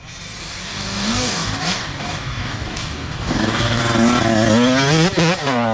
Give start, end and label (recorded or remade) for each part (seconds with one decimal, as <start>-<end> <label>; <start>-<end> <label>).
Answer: 0.0-0.4 recorded; 0.4-3.8 remade; 3.8-5.7 recorded